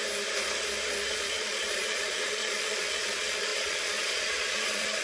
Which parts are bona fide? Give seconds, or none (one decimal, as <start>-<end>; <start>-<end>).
0.0-1.1